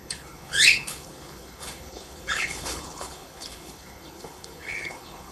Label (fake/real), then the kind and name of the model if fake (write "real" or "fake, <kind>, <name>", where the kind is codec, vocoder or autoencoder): fake, codec, HILCodec